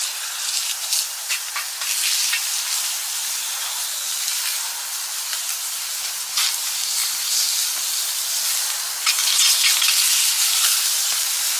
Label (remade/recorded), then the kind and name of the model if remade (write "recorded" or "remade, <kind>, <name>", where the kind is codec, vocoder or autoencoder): recorded